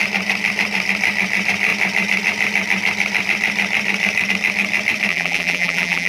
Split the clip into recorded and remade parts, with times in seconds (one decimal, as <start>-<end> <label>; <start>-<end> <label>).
0.0-5.1 recorded; 5.1-6.1 remade